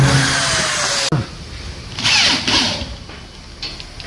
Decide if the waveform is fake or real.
real